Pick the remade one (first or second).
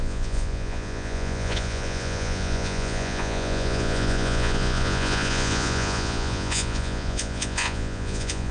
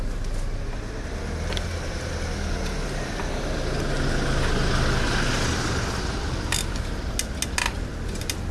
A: first